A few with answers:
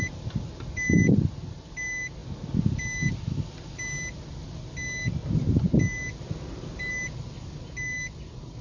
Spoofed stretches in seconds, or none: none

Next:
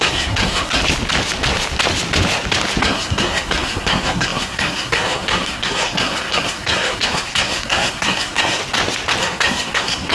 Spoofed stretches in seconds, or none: 0.0-0.8 (codec, SNAC); 2.8-8.6; 9.2-10.1

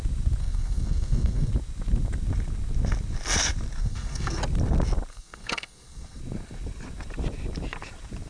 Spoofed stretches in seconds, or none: 0.4-1.5 (codec, SNAC); 3.8-4.4; 5.1-6.2

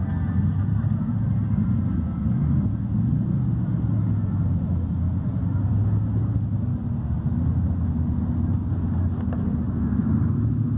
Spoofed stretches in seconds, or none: none

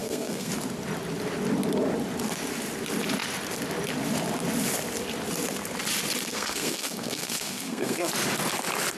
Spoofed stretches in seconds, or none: 0.0-0.5 (codec, SNAC); 6.3-8.1

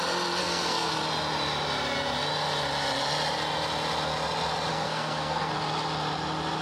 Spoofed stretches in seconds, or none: 0.4-0.9 (codec, SNAC); 4.7-5.5